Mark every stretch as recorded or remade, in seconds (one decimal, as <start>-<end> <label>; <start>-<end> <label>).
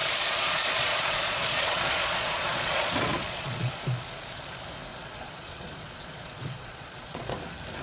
0.0-3.7 remade; 3.7-4.9 recorded; 4.9-7.3 remade; 7.3-7.8 recorded